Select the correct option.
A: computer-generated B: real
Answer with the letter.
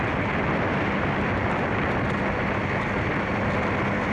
B